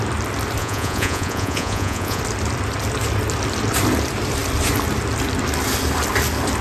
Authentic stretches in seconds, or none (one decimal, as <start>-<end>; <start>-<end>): 0.0-0.6; 2.2-6.6